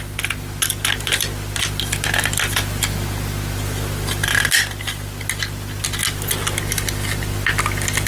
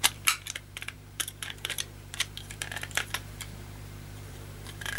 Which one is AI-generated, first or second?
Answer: second